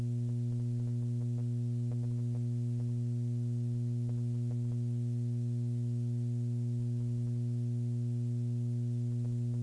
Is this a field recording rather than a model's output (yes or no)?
yes